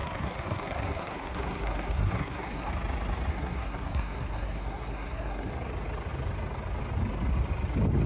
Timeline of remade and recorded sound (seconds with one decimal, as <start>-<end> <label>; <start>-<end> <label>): 0.0-2.7 remade; 2.7-3.3 recorded; 3.3-5.5 remade; 5.5-8.1 recorded